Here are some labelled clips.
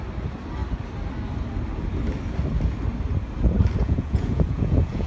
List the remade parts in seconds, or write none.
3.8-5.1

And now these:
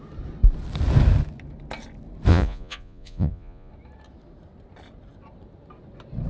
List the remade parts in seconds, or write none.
2.3-3.7

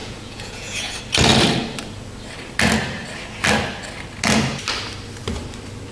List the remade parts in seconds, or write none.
0.0-0.9

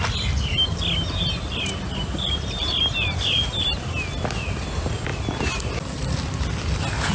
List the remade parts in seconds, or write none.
none

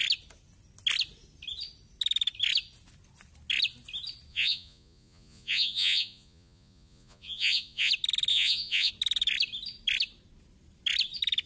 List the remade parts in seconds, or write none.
4.3-7.9; 8.3-8.9

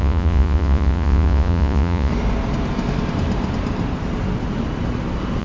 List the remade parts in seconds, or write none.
0.0-2.1

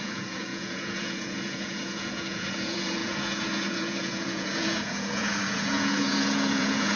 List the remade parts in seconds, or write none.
0.0-7.0